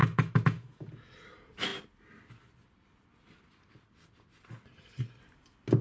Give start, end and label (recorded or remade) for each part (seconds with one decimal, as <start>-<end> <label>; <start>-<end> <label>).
0.0-0.9 remade; 0.9-5.8 recorded